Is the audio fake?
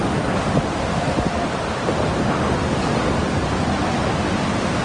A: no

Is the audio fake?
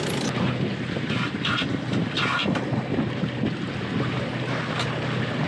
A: no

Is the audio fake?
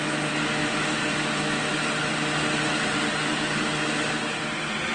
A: no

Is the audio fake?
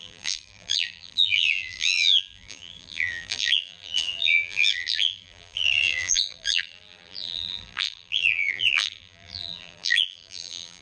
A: yes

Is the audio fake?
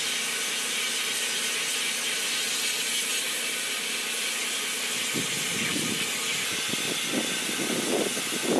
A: no